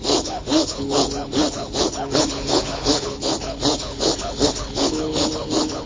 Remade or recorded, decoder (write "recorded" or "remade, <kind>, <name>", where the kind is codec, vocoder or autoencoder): remade, codec, HILCodec